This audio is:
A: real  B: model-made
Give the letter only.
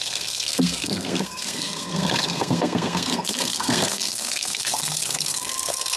B